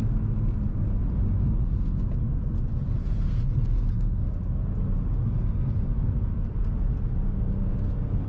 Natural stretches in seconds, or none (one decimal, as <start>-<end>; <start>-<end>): 0.0-1.6; 2.1-3.0; 4.4-5.2; 6.1-8.3